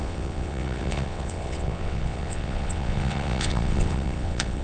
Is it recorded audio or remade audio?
remade